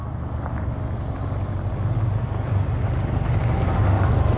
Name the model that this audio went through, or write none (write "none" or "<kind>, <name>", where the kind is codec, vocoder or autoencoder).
none